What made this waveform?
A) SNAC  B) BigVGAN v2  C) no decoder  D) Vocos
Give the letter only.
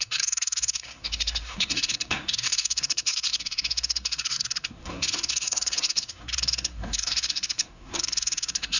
A